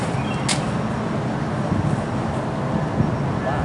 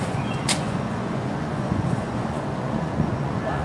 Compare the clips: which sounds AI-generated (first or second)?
second